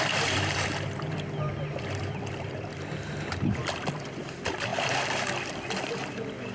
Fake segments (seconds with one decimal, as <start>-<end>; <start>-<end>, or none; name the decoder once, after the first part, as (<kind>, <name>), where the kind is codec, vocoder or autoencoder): 0.0-4.7 (vocoder, BigVGAN v2); 5.9-6.5